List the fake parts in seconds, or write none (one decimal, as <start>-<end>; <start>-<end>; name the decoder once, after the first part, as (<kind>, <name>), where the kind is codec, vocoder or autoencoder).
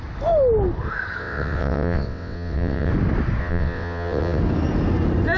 1.2-2.9 (vocoder, WaveNeXt); 3.4-4.4